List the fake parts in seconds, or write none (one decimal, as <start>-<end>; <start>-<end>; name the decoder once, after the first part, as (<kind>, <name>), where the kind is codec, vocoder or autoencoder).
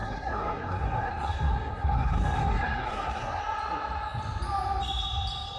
0.0-3.4 (codec, SNAC)